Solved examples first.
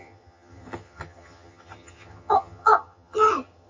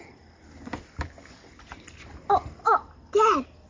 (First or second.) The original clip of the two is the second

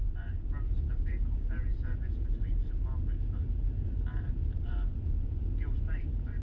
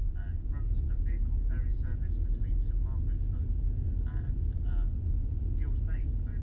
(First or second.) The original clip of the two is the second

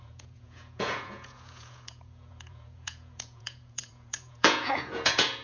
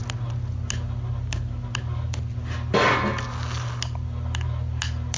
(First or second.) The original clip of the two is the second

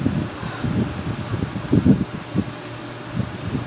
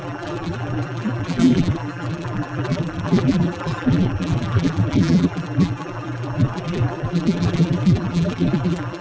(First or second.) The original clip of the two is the first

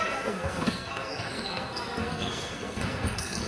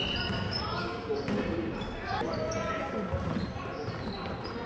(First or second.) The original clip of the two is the second